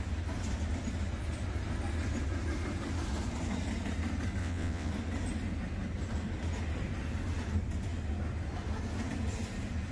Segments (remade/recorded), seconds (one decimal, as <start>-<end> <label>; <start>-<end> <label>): 0.0-4.4 recorded; 4.4-4.9 remade; 4.9-9.9 recorded